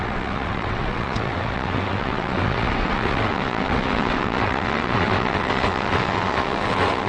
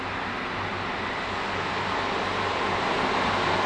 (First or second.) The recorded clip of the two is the second